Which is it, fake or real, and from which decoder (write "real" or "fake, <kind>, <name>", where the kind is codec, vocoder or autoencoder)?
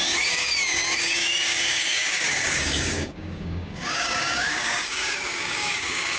fake, codec, DAC